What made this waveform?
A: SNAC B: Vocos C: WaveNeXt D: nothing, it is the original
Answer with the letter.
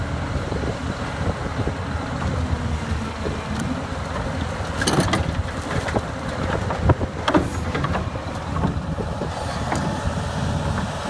D